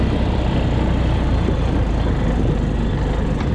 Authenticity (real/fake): real